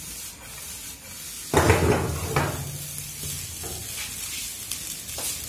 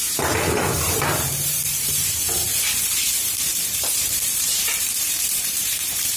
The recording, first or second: first